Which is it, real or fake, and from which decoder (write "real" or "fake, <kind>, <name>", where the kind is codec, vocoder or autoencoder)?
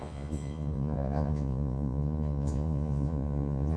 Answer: fake, vocoder, Vocos